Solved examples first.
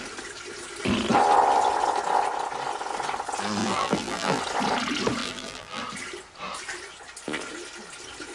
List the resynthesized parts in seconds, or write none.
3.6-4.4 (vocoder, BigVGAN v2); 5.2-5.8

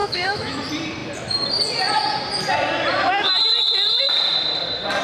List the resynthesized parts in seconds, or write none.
0.0-0.6 (autoencoder, DAC-VAE)

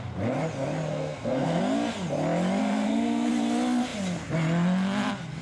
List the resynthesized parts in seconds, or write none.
0.9-1.6 (codec, SNAC); 2.6-3.3

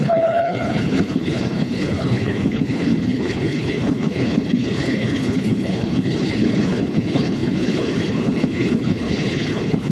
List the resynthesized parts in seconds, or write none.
0.0-9.9 (codec, HILCodec)

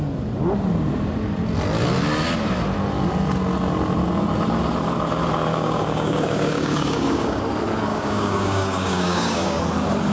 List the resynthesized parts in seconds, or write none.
5.5-7.4 (codec, DAC); 7.9-9.6